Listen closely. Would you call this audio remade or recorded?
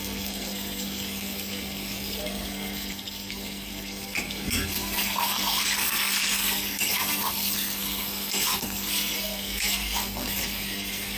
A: remade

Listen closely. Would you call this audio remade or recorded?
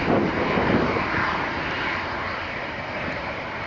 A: recorded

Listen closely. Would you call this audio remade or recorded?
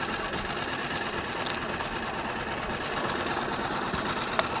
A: recorded